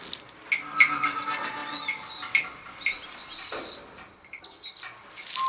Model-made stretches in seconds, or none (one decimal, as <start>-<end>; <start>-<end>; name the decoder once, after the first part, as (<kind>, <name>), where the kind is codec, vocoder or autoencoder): 1.6-4.4 (vocoder, BigVGAN v2)